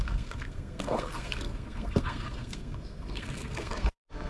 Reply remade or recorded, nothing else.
remade